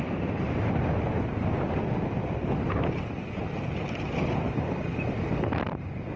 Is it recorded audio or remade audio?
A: recorded